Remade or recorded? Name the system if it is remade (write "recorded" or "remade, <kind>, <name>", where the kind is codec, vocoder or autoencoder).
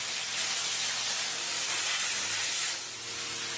recorded